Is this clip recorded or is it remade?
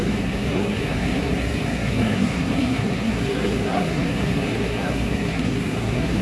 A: remade